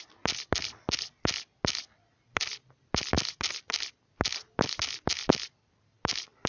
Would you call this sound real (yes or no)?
yes